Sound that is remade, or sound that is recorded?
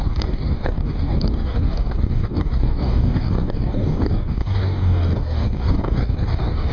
remade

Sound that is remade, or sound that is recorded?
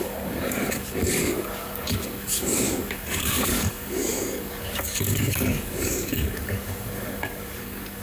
remade